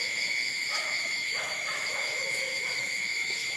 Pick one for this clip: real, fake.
fake